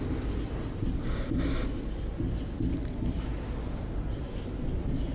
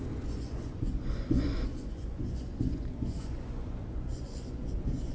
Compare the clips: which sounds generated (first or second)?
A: second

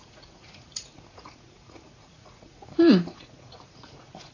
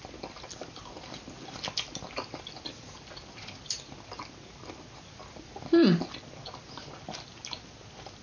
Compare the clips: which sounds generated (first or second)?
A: first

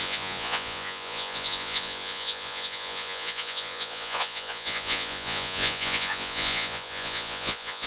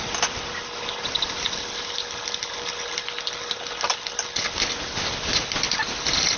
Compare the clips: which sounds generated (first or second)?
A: first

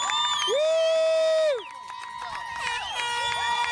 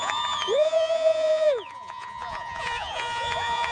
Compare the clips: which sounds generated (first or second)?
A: second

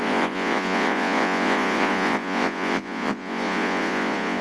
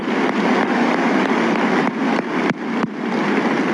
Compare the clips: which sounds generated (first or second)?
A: first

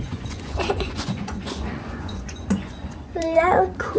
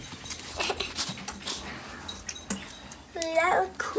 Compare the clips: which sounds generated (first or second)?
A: first